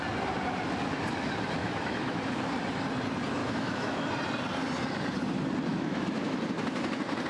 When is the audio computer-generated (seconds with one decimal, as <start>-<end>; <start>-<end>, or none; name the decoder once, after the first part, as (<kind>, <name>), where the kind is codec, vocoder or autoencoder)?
1.6-2.2 (autoencoder, DAC-VAE); 3.4-4.1; 5.7-6.4